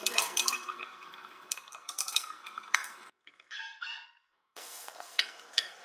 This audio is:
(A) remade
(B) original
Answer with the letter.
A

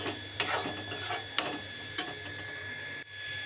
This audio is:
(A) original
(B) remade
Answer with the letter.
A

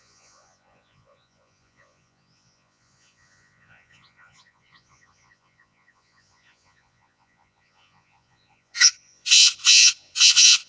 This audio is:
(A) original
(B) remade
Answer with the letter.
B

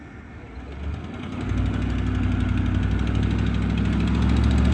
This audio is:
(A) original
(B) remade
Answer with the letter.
A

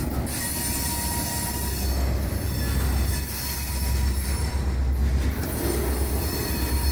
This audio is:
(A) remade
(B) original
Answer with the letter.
B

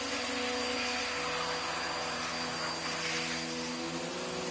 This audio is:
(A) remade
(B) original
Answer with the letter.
B